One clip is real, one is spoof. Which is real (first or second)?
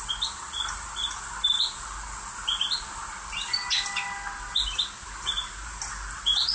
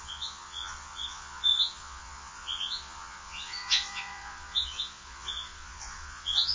first